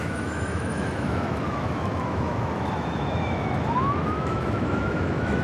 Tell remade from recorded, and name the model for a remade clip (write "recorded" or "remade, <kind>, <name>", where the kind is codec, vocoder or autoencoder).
remade, autoencoder, DAC-VAE